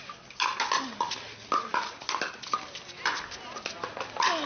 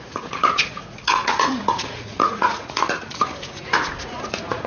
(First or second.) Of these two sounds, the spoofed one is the second